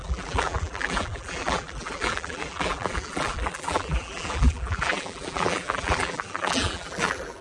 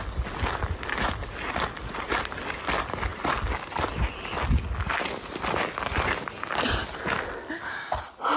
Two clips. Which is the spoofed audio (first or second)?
first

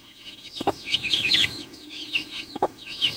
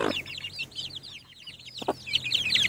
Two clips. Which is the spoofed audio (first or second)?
first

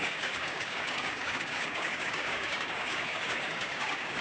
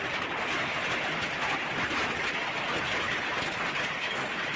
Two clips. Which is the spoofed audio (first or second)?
first